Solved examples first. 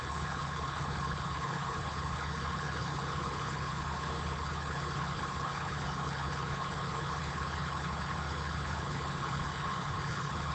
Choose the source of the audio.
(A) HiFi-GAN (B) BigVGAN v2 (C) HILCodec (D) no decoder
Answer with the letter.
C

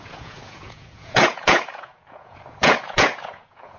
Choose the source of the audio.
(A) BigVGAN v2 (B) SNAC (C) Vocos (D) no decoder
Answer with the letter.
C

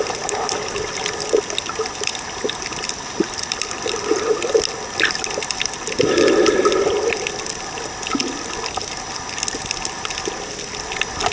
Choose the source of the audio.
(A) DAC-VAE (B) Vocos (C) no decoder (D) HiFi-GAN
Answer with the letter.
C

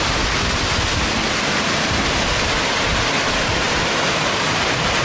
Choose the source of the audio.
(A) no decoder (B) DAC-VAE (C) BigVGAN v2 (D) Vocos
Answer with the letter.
A